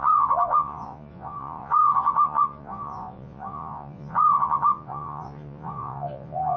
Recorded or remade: remade